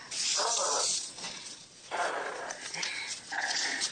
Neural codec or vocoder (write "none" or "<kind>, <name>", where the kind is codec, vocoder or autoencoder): vocoder, Vocos